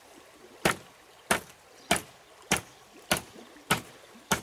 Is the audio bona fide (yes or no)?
no